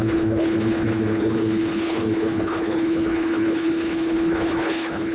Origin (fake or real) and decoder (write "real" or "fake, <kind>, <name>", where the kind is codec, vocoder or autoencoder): fake, codec, HILCodec